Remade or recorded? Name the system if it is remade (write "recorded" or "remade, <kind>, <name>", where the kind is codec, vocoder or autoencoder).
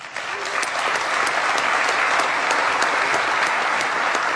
recorded